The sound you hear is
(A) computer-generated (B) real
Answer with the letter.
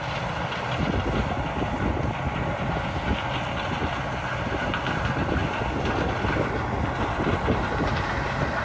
B